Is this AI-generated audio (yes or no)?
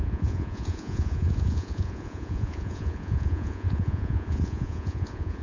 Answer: yes